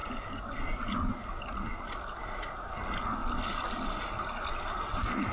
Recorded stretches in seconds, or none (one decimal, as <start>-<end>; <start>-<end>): 0.0-3.2; 3.9-5.3